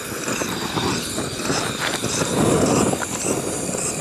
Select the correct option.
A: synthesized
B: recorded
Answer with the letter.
A